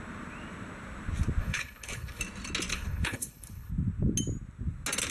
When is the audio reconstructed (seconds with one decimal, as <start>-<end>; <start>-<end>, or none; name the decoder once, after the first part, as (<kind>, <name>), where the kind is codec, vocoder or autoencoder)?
1.4-2.2 (codec, HILCodec); 2.7-3.7